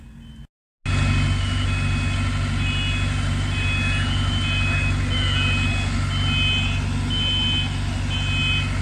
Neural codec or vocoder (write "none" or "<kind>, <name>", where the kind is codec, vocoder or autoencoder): none